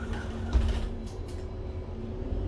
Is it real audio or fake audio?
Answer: fake